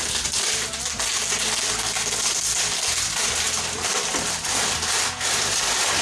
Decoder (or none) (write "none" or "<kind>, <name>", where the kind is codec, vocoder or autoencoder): none